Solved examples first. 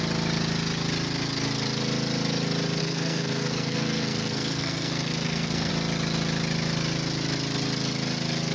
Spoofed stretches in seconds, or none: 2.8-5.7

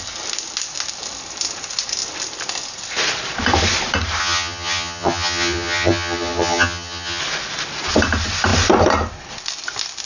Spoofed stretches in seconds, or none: 4.2-7.2

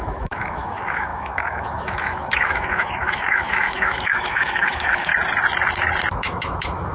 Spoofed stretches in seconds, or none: 0.0-5.1; 6.1-6.9